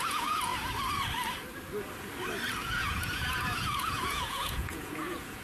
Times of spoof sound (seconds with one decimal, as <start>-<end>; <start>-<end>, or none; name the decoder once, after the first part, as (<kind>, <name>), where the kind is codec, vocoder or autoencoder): 0.0-0.5 (vocoder, Vocos); 2.6-5.4